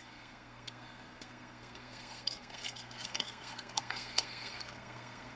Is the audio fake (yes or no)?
yes